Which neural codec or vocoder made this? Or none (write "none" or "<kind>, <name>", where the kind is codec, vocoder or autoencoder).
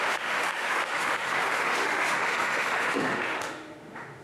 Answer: autoencoder, DAC-VAE